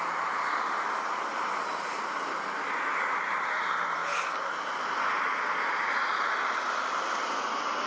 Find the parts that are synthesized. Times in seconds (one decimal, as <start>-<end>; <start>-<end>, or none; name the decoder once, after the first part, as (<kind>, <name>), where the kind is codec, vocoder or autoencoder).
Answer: none